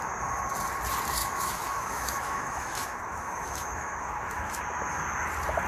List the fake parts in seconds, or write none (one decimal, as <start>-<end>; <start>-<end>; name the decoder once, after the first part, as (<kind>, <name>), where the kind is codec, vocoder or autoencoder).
1.2-4.6 (autoencoder, DAC-VAE)